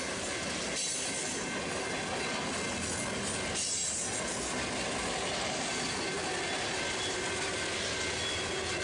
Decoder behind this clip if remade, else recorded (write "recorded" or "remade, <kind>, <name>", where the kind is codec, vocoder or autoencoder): recorded